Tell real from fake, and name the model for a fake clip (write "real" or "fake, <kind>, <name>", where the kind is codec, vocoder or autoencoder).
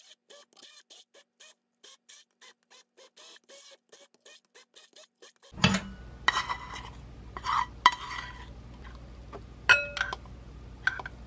real